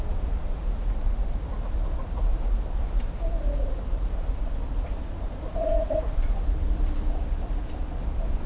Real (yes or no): no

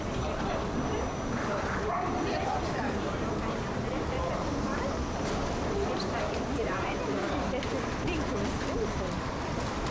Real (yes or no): no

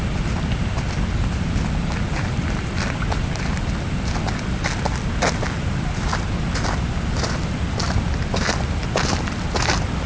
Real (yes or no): yes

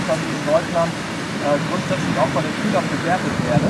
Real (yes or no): yes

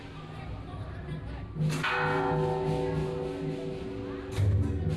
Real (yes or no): yes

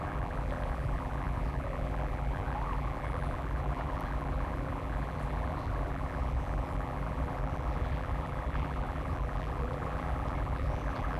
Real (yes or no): no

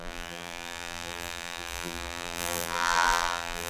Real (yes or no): no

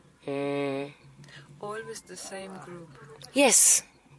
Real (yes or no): no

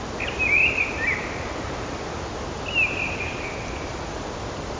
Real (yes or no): yes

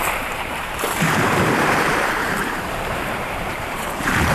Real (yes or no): no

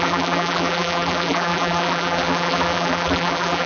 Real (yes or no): no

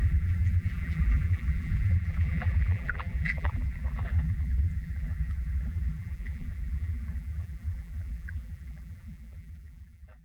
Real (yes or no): no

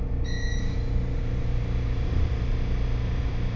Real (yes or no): no